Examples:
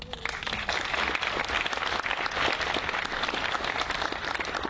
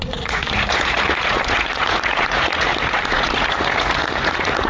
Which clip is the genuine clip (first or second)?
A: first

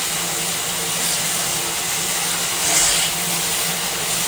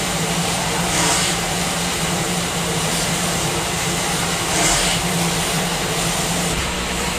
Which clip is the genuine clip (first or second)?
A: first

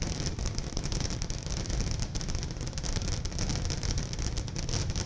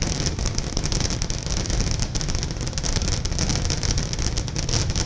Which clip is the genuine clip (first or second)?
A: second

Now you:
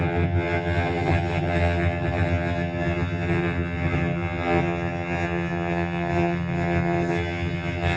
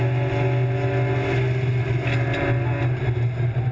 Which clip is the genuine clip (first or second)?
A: second